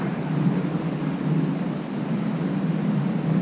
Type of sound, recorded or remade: recorded